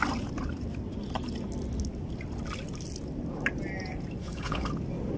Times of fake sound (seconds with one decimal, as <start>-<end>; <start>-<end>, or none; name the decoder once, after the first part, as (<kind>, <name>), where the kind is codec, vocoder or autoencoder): 4.2-4.7 (codec, HILCodec)